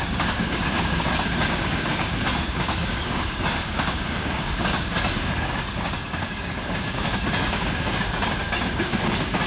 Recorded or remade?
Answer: remade